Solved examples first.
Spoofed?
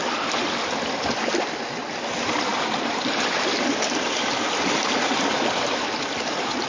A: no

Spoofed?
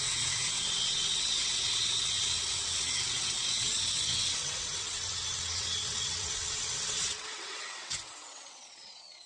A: yes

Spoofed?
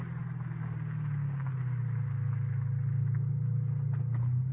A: no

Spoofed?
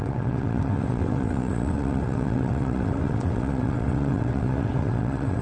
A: yes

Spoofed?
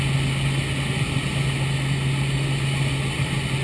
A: no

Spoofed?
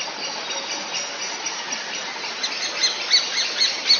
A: no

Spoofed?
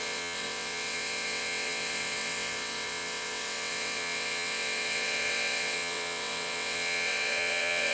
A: yes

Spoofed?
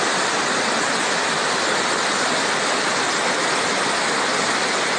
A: no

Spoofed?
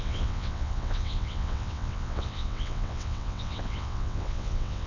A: yes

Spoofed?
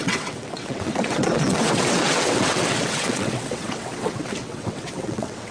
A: yes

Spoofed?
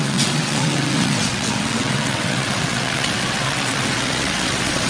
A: yes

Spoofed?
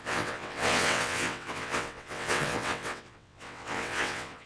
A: yes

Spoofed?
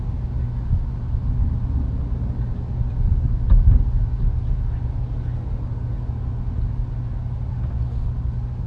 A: no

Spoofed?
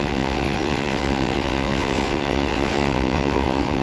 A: yes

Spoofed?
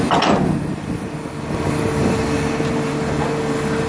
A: no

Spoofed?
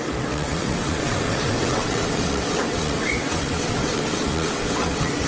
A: yes